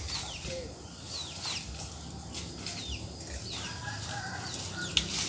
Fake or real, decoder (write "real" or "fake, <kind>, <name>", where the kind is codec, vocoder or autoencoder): real